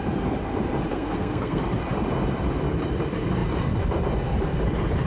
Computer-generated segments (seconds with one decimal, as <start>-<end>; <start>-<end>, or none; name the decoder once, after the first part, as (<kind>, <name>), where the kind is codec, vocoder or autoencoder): 0.9-1.6 (codec, SNAC)